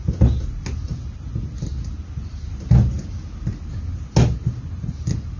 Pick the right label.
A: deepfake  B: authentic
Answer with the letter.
B